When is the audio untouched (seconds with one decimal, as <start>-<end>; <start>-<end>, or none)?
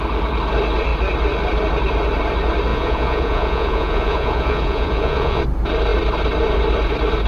0.0-2.7; 5.4-7.3